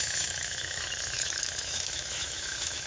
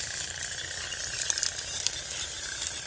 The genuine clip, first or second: second